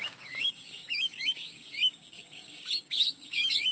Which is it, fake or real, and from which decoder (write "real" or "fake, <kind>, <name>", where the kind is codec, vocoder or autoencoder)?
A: fake, codec, DAC